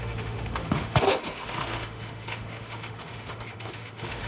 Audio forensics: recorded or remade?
remade